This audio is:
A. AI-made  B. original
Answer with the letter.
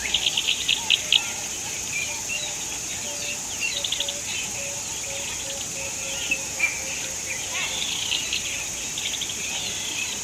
B